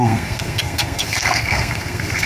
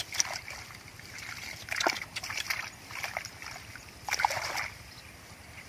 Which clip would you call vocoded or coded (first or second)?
first